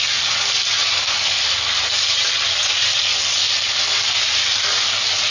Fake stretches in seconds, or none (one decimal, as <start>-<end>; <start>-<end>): none